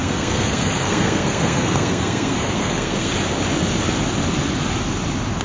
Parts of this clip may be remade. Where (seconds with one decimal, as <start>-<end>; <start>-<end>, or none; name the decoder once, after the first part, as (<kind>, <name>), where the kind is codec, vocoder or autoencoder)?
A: 0.0-3.1 (codec, SNAC)